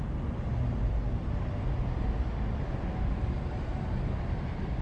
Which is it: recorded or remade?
recorded